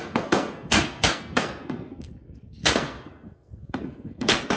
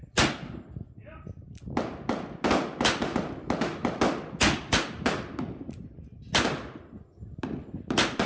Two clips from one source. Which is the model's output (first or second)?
first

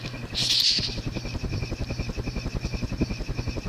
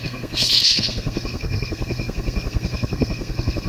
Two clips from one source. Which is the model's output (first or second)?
second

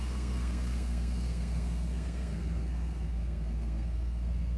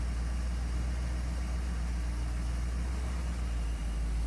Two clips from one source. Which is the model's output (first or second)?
first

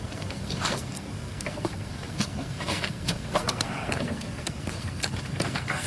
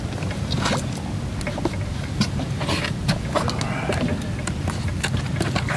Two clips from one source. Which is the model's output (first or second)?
first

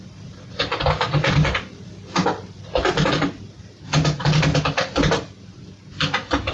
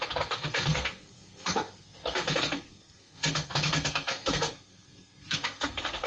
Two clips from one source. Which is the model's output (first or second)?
second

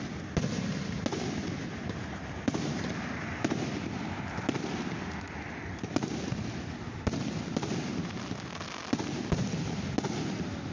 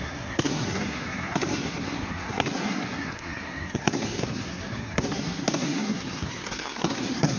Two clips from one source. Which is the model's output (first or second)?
second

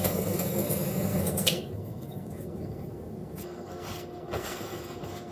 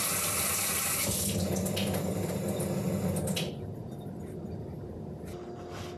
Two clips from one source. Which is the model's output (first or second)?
first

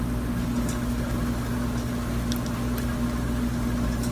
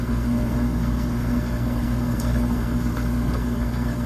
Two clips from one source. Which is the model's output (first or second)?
second